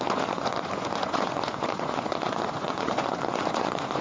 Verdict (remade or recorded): remade